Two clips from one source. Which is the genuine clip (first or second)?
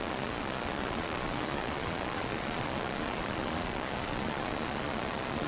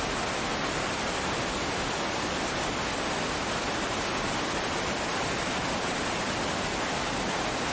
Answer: second